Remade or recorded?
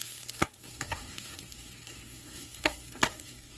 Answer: remade